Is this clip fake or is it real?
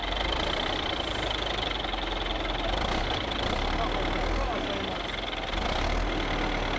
real